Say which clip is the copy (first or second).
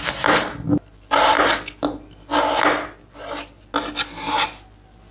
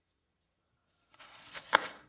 second